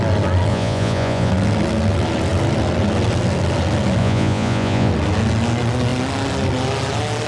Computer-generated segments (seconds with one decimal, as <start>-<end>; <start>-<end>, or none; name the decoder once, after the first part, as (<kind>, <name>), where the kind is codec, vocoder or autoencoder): 0.5-1.3 (vocoder, Vocos); 4.0-4.9